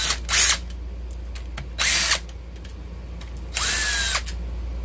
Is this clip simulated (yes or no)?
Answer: no